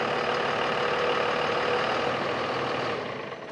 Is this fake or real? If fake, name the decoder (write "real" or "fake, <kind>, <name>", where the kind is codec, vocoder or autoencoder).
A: real